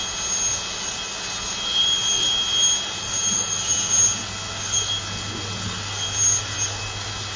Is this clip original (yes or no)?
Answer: yes